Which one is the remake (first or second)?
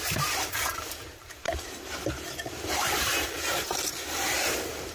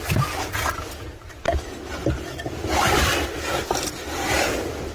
first